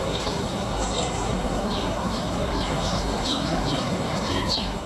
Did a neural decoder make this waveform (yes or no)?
yes